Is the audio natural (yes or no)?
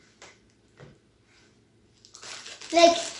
yes